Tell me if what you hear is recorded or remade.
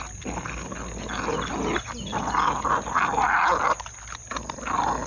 recorded